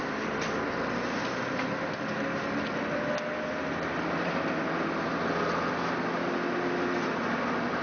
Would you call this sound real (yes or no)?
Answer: yes